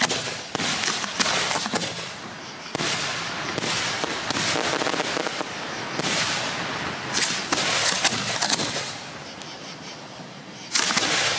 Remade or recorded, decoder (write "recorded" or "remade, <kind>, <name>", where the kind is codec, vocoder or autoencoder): recorded